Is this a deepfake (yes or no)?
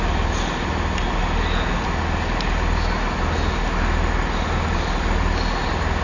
no